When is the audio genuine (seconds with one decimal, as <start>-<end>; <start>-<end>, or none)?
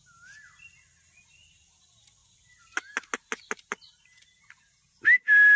0.0-5.6